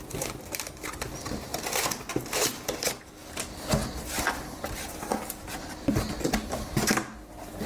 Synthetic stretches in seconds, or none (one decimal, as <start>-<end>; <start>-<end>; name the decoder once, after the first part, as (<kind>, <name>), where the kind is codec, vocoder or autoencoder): none